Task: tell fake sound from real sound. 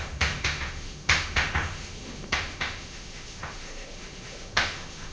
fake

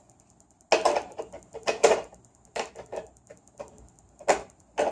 real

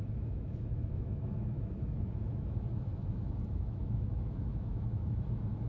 fake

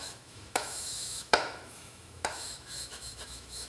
fake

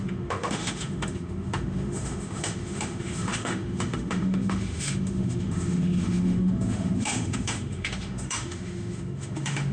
fake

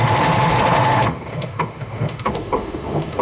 fake